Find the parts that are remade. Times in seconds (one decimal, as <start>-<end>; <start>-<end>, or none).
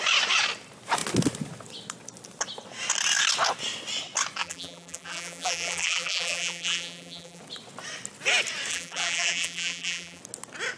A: 4.4-7.4; 8.7-10.2